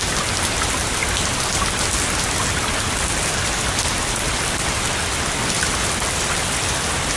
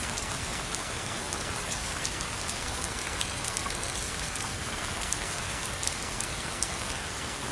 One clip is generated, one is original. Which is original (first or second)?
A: first